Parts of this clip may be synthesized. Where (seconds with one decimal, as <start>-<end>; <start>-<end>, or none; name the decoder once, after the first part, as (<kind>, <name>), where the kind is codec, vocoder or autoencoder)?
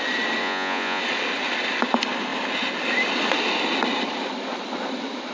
0.4-1.0 (vocoder, Vocos)